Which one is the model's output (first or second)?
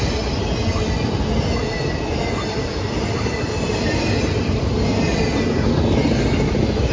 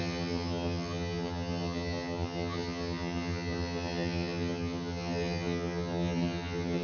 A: second